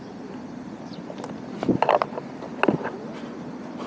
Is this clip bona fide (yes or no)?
yes